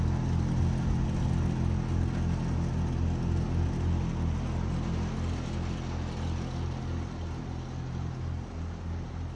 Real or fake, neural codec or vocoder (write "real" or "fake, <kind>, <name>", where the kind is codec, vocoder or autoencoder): real